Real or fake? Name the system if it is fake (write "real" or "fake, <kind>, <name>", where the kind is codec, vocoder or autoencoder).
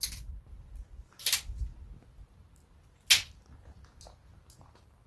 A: real